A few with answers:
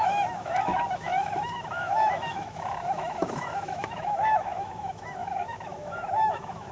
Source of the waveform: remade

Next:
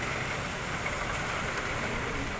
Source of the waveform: recorded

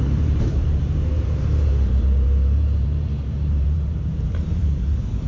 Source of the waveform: remade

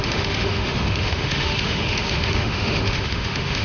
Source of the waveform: remade